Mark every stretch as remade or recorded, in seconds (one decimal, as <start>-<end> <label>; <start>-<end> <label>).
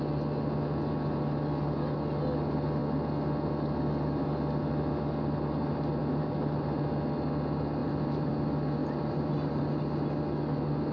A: 0.0-6.0 recorded; 6.0-6.8 remade; 6.8-7.8 recorded; 7.8-8.3 remade; 8.3-8.8 recorded; 8.8-9.6 remade; 9.6-10.9 recorded